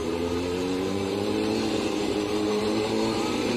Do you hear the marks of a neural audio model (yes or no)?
yes